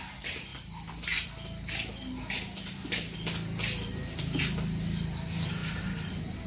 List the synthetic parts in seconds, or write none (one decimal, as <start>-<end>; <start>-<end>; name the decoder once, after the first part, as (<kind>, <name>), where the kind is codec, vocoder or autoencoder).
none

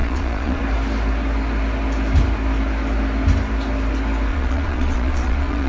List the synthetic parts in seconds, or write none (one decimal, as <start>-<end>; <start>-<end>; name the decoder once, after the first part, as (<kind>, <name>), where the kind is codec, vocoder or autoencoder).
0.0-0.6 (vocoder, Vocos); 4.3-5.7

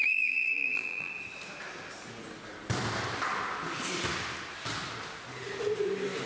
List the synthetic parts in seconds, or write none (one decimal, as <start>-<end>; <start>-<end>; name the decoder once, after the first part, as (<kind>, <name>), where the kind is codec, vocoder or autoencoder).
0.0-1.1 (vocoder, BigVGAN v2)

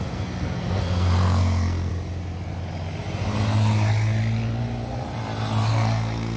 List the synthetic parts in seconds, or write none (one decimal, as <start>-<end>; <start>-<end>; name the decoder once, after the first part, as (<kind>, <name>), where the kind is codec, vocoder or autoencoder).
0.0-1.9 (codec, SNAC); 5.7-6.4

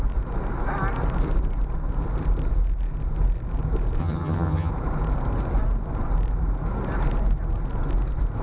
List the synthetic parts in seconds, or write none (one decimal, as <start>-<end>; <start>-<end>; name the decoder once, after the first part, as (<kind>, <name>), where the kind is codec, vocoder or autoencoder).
4.0-4.7 (vocoder, HiFi-GAN)

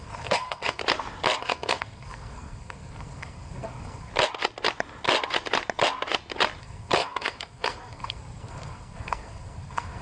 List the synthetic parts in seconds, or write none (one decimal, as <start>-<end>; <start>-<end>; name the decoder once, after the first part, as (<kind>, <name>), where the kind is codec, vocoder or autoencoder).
0.0-0.8 (codec, SNAC); 1.4-4.1; 6.6-10.0

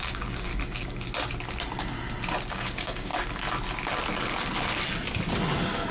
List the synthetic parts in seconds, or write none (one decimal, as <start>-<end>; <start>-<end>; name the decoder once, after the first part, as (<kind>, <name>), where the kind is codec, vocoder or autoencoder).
0.0-0.5 (codec, DAC); 2.5-3.1

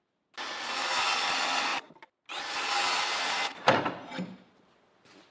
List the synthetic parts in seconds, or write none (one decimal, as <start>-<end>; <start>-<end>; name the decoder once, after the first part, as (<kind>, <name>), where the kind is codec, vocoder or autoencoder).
none